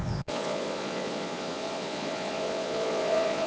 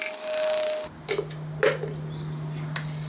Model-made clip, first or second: first